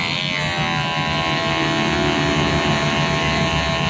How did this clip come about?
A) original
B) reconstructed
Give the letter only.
A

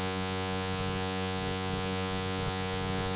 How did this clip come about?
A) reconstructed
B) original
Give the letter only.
A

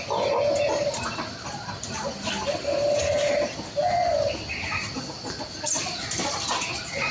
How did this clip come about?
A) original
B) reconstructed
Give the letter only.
A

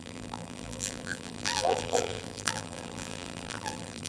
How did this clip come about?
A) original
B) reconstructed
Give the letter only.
B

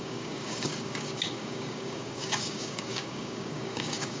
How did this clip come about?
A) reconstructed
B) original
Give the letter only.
A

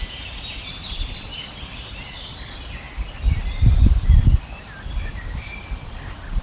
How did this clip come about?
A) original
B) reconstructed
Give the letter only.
A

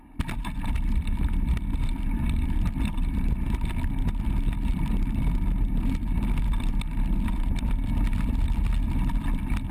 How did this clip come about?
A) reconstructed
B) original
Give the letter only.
B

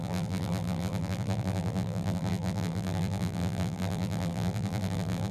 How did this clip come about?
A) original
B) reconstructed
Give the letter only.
B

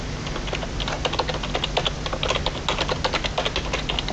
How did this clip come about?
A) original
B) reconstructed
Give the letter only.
A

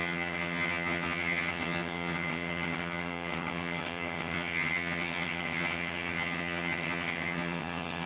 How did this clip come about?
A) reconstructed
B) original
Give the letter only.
A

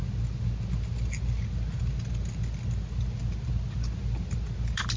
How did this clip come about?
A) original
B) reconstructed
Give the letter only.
A